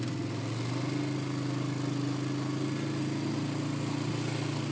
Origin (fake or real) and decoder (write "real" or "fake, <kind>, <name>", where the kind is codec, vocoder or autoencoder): real